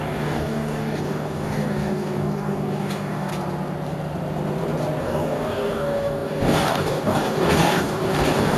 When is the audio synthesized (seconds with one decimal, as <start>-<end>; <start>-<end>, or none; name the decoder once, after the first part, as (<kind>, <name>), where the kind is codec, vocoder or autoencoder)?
0.0-3.3 (codec, DAC); 5.0-8.6